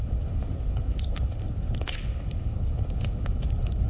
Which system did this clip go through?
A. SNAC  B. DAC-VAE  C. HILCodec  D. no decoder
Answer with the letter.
C